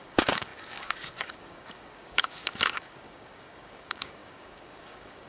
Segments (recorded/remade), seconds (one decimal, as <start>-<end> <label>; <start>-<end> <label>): 0.0-5.3 remade